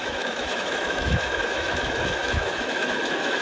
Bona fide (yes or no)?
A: no